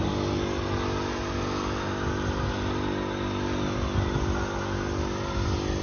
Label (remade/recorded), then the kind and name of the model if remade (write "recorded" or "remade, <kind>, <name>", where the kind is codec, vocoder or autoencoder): recorded